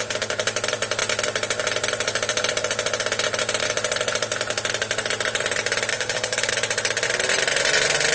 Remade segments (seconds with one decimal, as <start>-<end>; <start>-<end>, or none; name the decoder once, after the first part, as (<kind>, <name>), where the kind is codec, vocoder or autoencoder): 5.9-6.5 (codec, DAC)